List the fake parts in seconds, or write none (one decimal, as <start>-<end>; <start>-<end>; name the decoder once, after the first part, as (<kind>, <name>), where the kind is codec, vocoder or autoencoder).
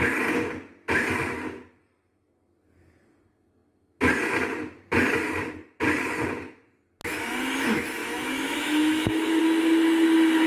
8.0-9.4 (autoencoder, DAC-VAE)